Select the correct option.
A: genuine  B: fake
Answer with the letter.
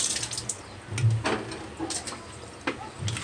A